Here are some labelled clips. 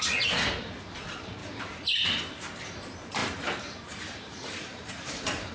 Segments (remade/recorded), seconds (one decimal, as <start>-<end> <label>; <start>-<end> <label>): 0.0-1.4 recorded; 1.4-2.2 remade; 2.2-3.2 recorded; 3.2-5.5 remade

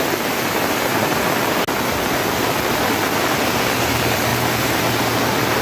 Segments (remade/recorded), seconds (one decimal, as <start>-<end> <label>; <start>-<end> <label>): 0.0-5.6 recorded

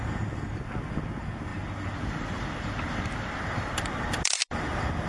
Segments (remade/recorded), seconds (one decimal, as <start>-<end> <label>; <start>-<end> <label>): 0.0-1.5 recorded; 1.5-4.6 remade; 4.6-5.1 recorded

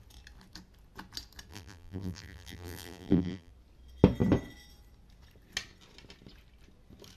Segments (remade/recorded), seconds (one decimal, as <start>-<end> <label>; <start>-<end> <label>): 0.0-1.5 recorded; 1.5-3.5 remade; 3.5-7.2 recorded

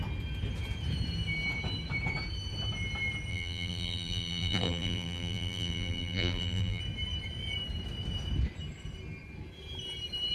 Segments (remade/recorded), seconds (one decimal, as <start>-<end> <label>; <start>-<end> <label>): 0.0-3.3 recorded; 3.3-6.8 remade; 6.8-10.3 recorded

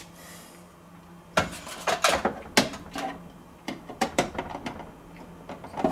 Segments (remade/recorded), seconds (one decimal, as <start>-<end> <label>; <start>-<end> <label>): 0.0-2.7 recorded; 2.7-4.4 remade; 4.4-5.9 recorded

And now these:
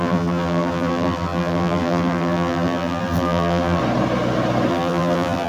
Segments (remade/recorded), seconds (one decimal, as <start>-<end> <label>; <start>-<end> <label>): 0.0-3.8 remade; 3.8-4.7 recorded; 4.7-5.5 remade

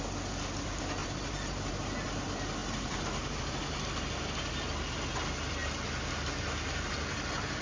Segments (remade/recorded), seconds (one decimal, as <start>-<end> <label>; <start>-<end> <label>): 0.0-1.0 recorded; 1.0-1.7 remade; 1.7-2.6 recorded; 2.6-3.4 remade; 3.4-7.6 recorded